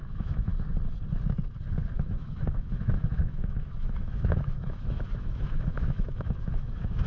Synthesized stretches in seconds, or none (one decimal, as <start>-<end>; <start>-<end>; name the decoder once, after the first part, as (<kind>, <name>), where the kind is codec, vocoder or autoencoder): 0.0-0.5 (autoencoder, DAC-VAE); 1.9-7.1